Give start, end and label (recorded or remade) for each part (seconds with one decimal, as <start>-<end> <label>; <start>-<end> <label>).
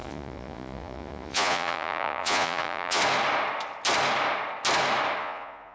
0.0-3.0 remade; 3.0-5.2 recorded; 5.2-5.7 remade